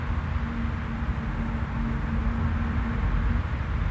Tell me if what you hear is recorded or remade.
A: recorded